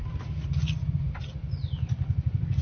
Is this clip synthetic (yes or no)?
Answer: no